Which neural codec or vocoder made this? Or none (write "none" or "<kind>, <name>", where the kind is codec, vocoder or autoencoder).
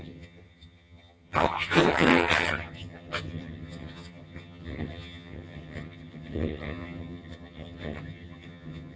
vocoder, HiFi-GAN